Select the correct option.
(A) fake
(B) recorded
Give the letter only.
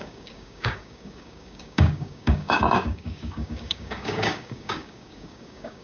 A